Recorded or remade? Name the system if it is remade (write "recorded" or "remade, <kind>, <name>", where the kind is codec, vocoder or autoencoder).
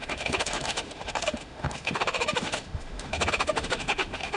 remade, autoencoder, DAC-VAE